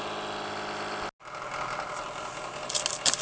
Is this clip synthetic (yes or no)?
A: no